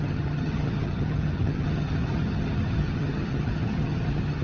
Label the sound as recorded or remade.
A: remade